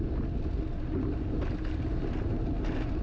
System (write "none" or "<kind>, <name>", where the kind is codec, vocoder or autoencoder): none